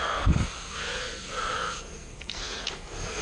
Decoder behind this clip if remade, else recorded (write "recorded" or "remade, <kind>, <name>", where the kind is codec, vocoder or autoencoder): remade, codec, SNAC